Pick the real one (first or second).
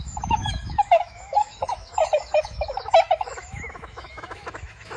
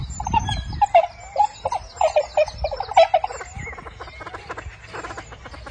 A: second